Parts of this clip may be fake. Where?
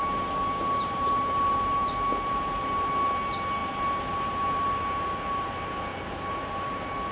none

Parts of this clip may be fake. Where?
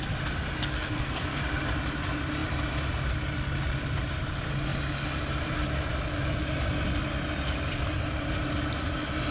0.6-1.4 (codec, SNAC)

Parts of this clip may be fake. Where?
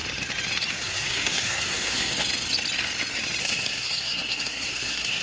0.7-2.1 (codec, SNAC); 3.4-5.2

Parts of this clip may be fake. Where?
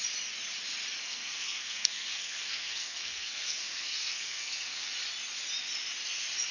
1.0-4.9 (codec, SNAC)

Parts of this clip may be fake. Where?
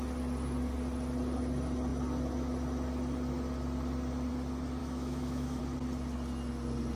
4.8-5.6 (autoencoder, DAC-VAE)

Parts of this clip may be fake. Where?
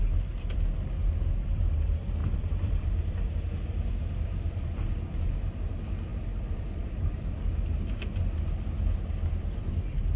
2.2-3.3 (vocoder, BigVGAN v2); 6.1-7.5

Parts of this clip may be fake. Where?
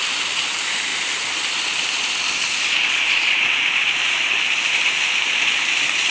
none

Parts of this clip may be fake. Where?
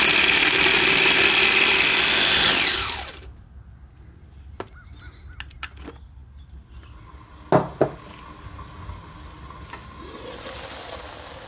none